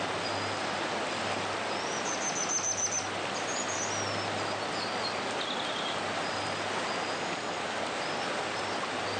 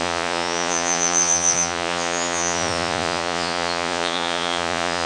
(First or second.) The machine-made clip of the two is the second